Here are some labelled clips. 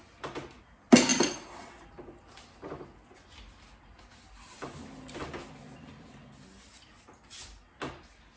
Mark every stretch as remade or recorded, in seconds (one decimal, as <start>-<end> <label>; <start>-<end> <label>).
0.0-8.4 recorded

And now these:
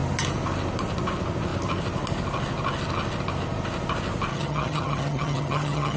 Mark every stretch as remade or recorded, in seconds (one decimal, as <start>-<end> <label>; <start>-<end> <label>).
0.0-4.3 recorded; 4.3-6.0 remade

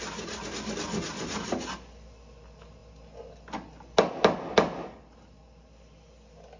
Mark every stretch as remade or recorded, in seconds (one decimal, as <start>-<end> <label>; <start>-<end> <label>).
0.0-6.6 recorded